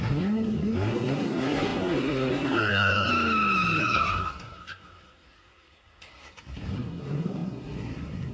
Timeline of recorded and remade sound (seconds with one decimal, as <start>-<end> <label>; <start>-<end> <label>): 0.0-3.1 remade; 3.1-3.8 recorded; 3.8-8.3 remade